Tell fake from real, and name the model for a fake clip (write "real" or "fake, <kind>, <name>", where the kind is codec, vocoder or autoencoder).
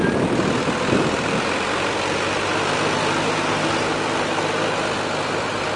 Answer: real